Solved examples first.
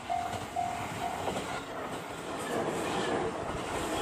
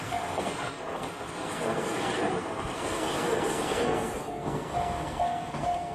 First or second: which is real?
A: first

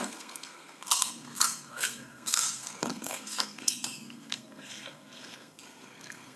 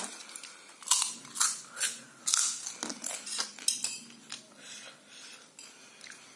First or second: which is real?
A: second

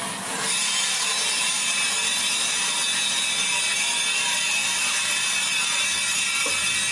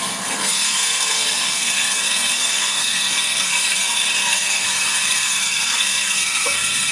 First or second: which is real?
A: first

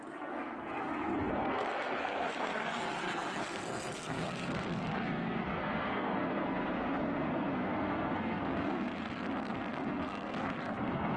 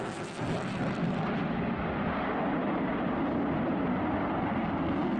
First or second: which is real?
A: second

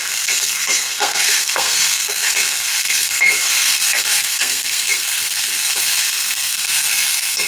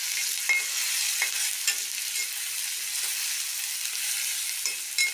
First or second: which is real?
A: second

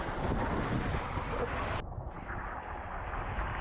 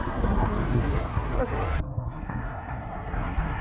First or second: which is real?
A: first